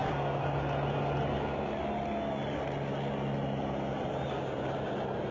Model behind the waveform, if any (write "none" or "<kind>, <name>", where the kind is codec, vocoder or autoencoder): none